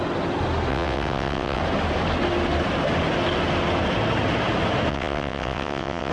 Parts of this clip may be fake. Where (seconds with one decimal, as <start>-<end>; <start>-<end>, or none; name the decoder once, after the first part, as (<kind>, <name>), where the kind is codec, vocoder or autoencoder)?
0.7-1.6 (vocoder, WaveNeXt); 4.9-6.1